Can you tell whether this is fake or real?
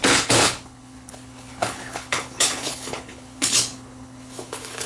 fake